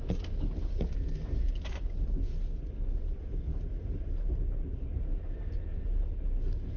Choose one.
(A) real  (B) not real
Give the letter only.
A